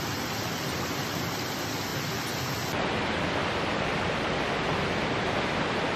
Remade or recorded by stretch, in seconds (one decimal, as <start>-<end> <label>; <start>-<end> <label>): 0.0-6.0 recorded